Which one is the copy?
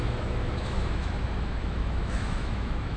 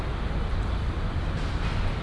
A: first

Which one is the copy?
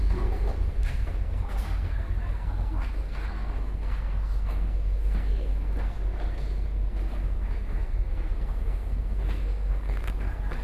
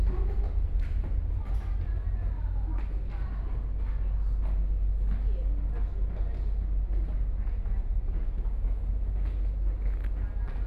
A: first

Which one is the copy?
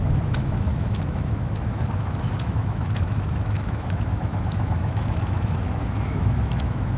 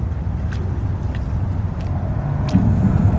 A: first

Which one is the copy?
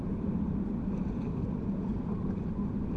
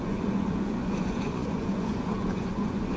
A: second